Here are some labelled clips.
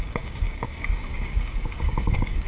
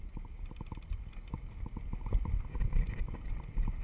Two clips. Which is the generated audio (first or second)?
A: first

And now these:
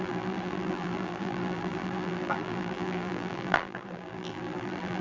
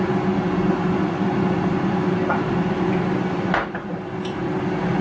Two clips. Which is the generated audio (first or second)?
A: first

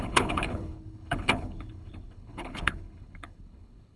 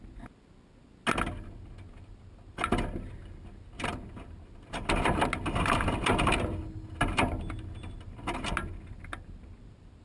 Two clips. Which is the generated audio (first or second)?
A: first